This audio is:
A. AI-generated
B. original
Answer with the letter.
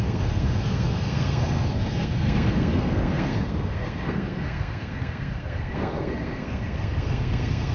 A